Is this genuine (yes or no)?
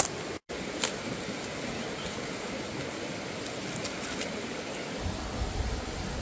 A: yes